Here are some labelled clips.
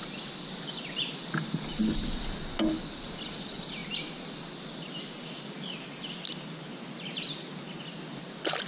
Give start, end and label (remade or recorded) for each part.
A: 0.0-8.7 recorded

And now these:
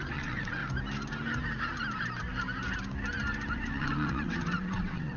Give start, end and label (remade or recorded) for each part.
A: 0.0-0.6 remade; 0.6-3.5 recorded; 3.5-5.2 remade

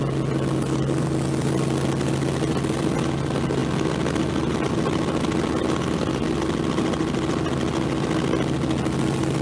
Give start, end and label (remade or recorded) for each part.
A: 0.0-9.4 recorded